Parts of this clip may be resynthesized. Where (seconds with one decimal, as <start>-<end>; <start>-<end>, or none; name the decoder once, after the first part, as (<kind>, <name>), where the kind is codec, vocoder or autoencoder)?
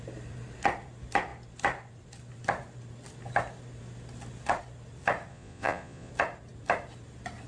5.3-6.1 (vocoder, Vocos)